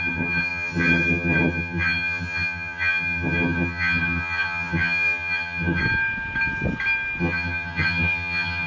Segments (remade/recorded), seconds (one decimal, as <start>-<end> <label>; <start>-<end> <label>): 0.0-5.8 remade; 5.8-7.2 recorded; 7.2-8.7 remade